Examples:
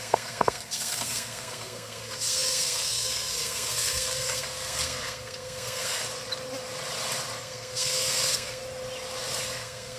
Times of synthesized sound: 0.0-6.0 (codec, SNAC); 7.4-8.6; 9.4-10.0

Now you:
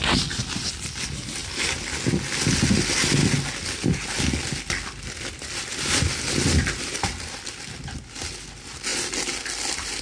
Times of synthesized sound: none

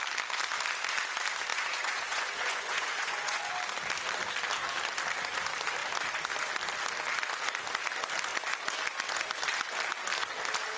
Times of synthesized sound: 1.5-3.5 (vocoder, Vocos)

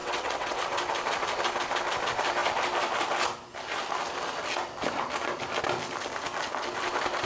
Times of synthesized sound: 0.0-0.6 (vocoder, WaveNeXt)